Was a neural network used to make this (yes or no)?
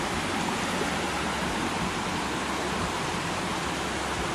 no